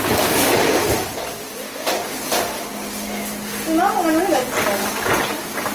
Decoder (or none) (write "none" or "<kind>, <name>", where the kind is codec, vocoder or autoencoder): none